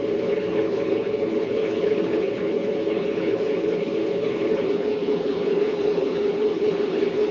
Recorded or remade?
remade